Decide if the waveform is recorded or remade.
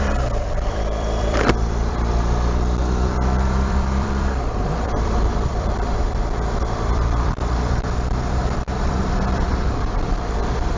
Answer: remade